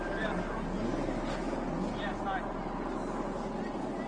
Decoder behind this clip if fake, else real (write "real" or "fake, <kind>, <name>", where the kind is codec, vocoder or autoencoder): real